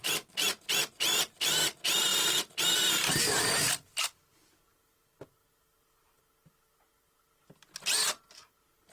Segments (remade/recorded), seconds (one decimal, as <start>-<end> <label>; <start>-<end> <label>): 0.0-0.7 remade; 0.7-2.1 recorded; 2.1-2.6 remade; 2.6-8.9 recorded